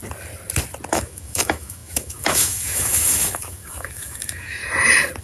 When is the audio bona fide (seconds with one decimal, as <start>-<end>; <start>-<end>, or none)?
0.0-0.9; 4.6-5.2